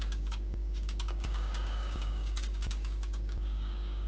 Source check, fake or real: fake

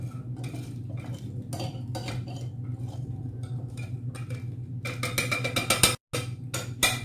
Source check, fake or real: real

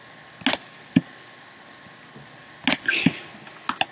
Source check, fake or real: real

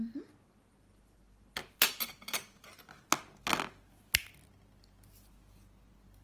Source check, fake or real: real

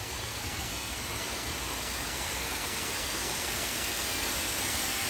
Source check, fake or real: fake